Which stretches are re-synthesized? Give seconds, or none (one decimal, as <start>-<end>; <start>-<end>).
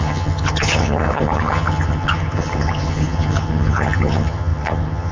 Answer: 0.0-5.1